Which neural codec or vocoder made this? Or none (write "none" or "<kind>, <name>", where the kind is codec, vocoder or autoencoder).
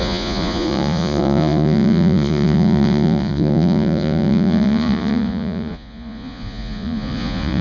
vocoder, Vocos